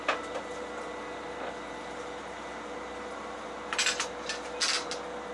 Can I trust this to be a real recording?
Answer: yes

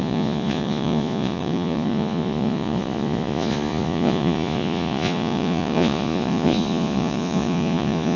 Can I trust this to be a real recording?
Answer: no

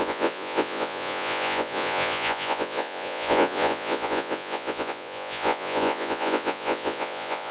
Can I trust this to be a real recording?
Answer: no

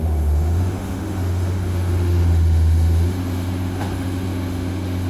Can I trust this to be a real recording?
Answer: no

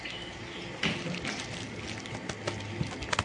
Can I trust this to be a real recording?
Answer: yes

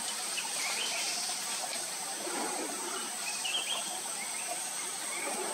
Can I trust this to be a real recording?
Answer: no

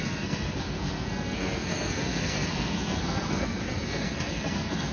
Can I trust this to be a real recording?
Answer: no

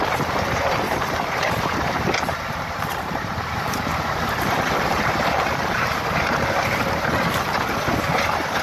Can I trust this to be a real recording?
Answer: no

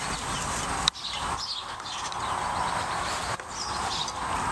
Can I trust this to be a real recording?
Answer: yes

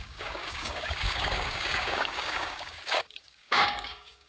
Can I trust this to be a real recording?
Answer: no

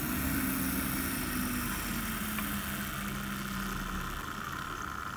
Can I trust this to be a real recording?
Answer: yes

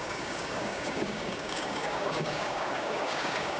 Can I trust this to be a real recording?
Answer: no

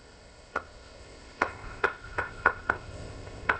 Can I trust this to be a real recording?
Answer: no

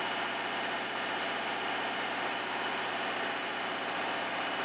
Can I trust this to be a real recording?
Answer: yes